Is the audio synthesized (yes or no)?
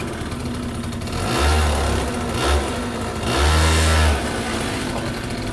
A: no